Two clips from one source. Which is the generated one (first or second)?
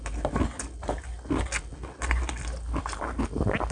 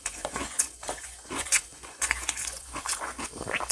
second